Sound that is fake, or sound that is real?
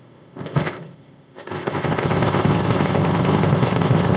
fake